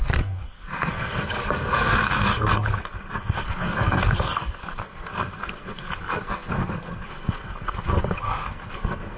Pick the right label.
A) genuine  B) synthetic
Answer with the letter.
B